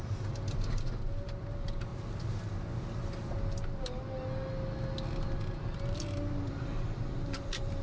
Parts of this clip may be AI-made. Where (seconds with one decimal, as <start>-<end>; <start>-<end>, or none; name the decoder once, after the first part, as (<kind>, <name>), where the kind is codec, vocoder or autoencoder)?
0.0-1.9 (vocoder, BigVGAN v2); 5.9-7.8